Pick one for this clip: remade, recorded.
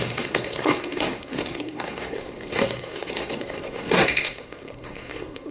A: remade